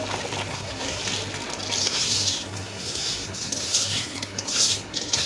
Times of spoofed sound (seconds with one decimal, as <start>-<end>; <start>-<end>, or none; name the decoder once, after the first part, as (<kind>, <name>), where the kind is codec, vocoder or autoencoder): 0.5-1.0 (codec, SNAC); 1.8-5.3